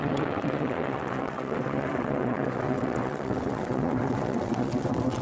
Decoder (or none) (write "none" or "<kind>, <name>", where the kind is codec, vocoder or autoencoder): vocoder, WaveNeXt